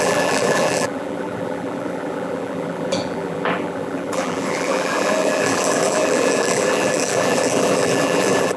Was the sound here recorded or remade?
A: remade